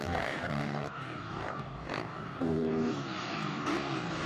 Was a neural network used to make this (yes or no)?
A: yes